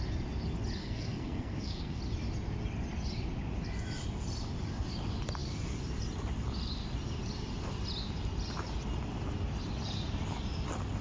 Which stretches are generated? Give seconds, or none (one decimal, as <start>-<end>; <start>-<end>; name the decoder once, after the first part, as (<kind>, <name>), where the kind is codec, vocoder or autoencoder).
0.8-2.0 (codec, SNAC)